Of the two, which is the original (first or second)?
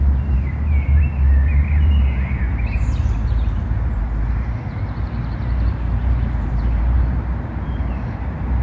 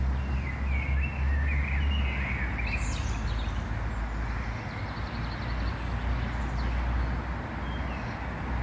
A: second